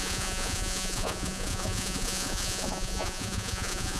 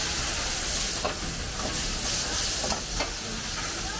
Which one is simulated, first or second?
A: first